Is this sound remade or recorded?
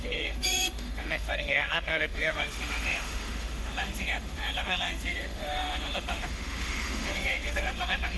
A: remade